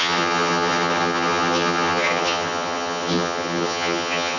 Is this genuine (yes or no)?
no